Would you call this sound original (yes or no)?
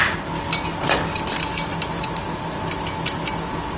yes